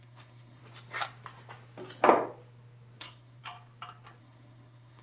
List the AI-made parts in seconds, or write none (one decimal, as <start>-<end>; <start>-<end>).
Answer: 0.0-0.6; 3.0-3.4; 4.2-5.0

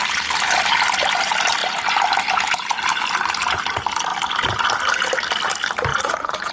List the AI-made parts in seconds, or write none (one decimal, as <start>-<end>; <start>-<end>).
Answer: 5.9-6.5